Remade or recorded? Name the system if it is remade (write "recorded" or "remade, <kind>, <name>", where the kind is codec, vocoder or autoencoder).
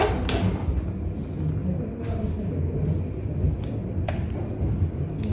recorded